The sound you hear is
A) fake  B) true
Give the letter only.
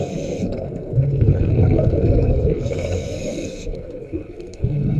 A